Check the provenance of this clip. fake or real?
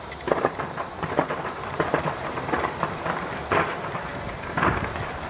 fake